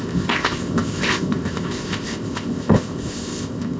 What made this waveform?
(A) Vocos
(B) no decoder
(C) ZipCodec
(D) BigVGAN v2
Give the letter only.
C